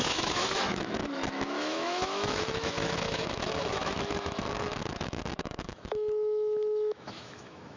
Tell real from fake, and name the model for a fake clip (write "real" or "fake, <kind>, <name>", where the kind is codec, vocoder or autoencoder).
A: fake, autoencoder, DAC-VAE